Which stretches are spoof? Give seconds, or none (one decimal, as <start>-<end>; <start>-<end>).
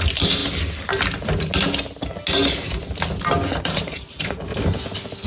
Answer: 0.0-0.4; 3.6-4.5